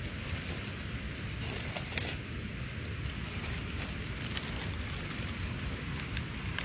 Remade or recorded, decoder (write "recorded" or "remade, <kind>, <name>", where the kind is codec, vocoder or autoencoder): recorded